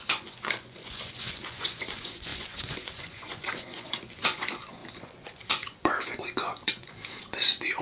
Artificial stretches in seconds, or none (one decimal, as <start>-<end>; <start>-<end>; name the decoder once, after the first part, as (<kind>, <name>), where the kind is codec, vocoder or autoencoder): 0.0-7.8 (vocoder, Vocos)